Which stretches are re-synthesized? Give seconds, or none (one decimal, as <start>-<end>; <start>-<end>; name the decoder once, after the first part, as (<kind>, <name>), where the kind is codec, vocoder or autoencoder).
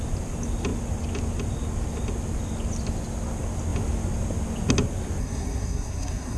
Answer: 5.2-6.4 (codec, SNAC)